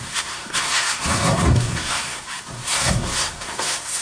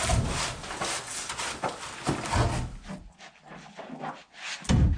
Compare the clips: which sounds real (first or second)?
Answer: second